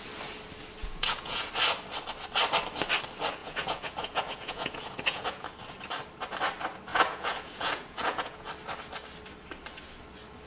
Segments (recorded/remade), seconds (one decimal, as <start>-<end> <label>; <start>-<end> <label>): 0.0-0.8 recorded; 0.8-1.5 remade; 1.5-3.4 recorded; 3.4-5.5 remade; 5.5-6.9 recorded; 6.9-8.5 remade; 8.5-10.5 recorded